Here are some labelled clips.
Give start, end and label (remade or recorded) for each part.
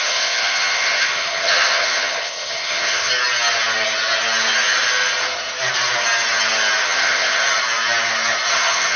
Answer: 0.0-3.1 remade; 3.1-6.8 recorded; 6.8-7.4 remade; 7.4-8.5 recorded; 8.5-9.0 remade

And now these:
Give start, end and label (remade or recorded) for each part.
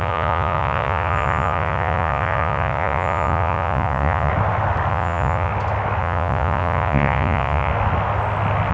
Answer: 0.0-4.3 remade; 4.3-4.9 recorded; 4.9-5.5 remade; 5.5-6.0 recorded; 6.0-7.7 remade; 7.7-8.7 recorded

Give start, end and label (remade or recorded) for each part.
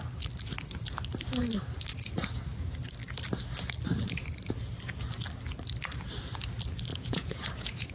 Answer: 0.0-6.9 recorded; 6.9-7.9 remade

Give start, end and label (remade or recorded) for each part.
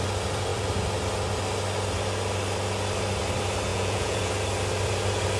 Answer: 0.0-3.7 recorded; 3.7-4.3 remade; 4.3-5.4 recorded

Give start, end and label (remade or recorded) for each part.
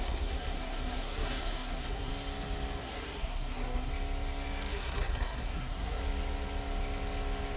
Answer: 0.0-2.1 remade; 2.1-2.8 recorded; 2.8-3.9 remade; 3.9-4.7 recorded; 4.7-6.0 remade; 6.0-7.6 recorded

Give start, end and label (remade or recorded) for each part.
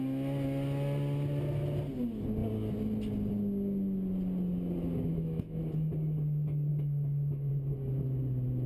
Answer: 0.0-5.1 recorded; 5.1-5.6 remade; 5.6-6.7 recorded; 6.7-7.5 remade; 7.5-8.7 recorded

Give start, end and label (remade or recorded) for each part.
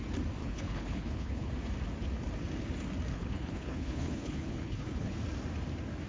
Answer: 0.0-0.4 recorded; 0.4-1.5 remade; 1.5-3.1 recorded; 3.1-5.1 remade; 5.1-6.1 recorded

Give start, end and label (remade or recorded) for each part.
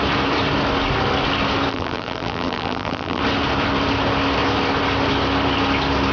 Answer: 0.0-1.7 recorded; 1.7-3.2 remade; 3.2-6.1 recorded